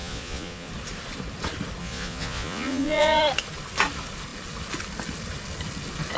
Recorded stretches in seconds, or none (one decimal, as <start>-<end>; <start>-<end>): 0.7-1.8; 3.2-6.2